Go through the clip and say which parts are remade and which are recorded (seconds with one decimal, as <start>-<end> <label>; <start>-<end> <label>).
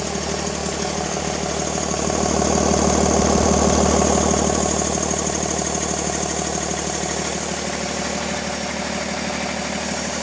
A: 0.0-0.6 recorded; 0.6-1.2 remade; 1.2-10.2 recorded